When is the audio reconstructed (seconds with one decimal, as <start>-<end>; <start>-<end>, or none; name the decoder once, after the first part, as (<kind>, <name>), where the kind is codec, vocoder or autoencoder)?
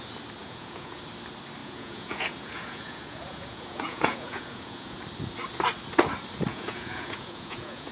0.4-1.0 (vocoder, Vocos); 1.6-5.0; 6.5-7.9